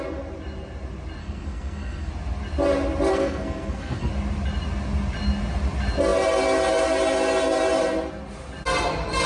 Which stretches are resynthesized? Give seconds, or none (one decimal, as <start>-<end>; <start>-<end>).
1.2-2.1; 3.1-4.1